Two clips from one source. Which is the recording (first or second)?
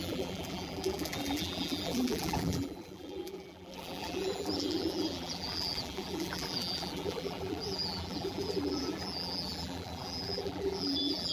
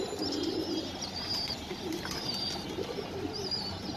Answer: second